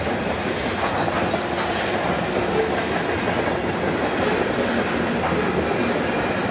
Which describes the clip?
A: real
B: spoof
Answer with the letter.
A